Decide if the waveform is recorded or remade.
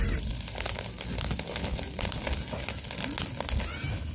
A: recorded